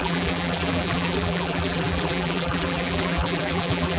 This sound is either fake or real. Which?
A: fake